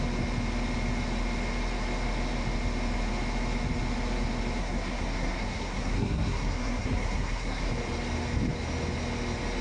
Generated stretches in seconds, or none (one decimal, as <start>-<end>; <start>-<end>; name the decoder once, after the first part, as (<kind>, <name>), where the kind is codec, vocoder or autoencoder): 4.6-7.7 (codec, SNAC)